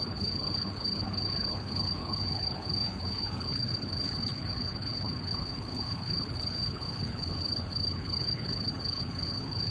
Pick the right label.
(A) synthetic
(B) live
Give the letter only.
A